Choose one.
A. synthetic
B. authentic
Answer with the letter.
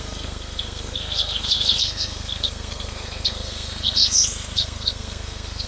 A